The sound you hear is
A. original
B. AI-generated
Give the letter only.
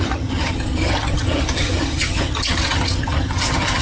B